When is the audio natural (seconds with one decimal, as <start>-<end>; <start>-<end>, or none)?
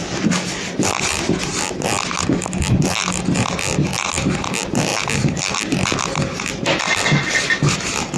0.0-8.2